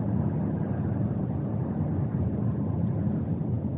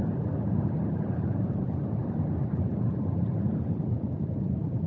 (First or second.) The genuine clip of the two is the first